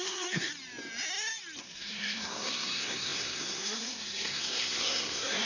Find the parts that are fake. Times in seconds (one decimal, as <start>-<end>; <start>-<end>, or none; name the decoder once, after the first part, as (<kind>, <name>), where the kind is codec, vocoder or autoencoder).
0.0-0.5 (codec, SNAC); 1.6-5.5